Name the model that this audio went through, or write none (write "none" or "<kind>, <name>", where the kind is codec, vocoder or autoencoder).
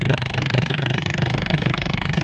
codec, SNAC